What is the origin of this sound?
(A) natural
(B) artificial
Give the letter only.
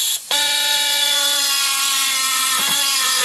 B